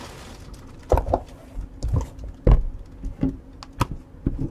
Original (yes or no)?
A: yes